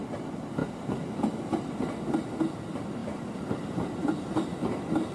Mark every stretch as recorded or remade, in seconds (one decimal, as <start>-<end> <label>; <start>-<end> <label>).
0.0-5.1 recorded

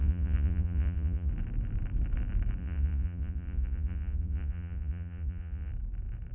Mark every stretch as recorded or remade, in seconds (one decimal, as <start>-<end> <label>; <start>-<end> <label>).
0.0-1.3 remade; 1.3-2.6 recorded; 2.6-5.7 remade; 5.7-6.3 recorded

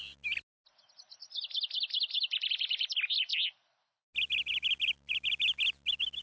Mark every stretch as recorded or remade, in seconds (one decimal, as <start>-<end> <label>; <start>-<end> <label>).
0.0-6.2 recorded